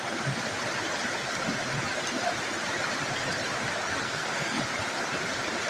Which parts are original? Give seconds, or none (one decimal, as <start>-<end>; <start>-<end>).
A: 0.0-3.9; 4.6-5.7